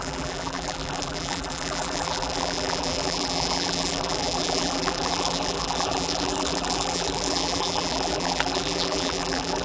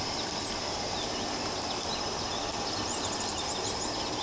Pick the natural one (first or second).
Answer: second